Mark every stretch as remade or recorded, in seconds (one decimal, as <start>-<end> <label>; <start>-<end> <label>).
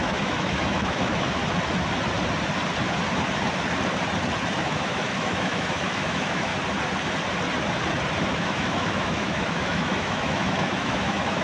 0.0-1.4 remade; 1.4-4.6 recorded; 4.6-6.5 remade; 6.5-8.2 recorded; 8.2-11.4 remade